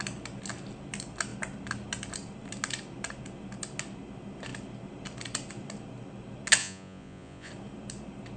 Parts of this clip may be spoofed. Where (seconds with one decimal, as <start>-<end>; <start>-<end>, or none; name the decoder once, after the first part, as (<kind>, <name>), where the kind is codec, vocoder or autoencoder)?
6.6-7.5 (vocoder, Vocos)